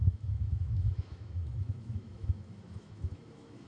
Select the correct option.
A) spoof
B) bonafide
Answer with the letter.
A